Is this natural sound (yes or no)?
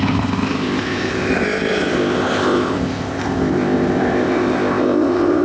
no